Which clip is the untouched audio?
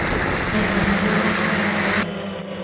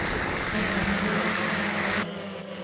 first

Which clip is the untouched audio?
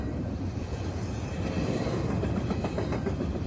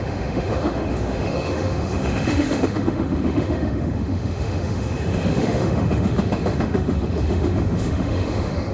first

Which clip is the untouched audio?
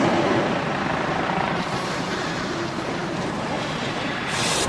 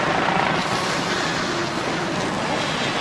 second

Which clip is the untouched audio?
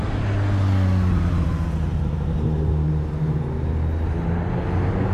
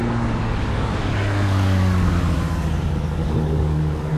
first